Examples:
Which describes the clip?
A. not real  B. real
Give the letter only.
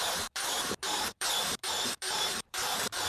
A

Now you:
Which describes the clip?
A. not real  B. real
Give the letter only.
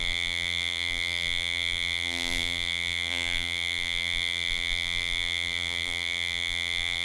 A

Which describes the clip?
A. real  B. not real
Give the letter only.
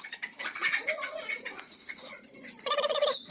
B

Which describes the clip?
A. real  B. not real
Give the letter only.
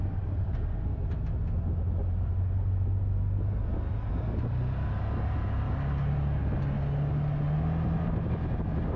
A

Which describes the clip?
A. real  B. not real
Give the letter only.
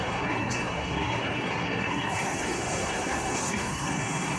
B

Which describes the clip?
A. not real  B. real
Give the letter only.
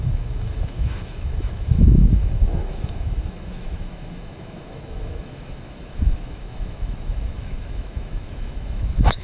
A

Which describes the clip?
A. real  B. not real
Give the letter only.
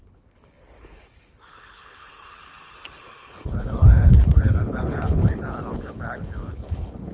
B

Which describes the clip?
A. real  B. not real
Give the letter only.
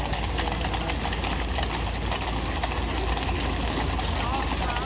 A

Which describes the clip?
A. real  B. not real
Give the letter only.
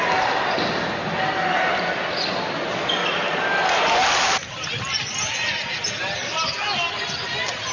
A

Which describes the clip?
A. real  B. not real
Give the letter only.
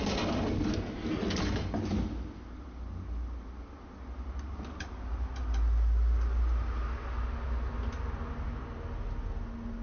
A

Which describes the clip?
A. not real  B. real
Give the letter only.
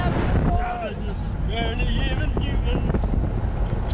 B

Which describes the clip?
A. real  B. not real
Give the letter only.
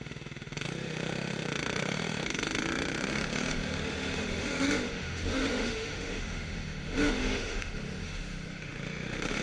B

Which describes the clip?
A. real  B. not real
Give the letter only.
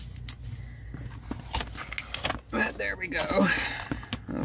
A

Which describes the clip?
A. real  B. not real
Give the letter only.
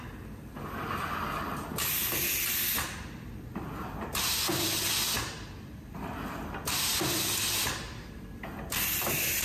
A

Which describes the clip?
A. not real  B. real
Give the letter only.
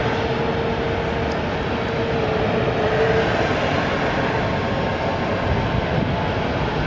B